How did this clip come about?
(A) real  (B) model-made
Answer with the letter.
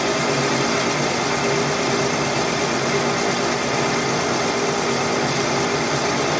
A